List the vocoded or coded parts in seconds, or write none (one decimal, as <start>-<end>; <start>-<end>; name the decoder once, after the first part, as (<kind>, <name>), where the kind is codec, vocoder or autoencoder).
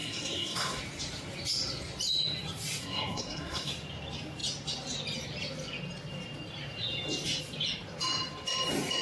0.0-0.8 (codec, SNAC); 2.8-3.7